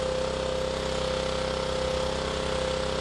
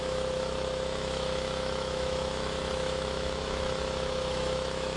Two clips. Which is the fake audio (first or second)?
second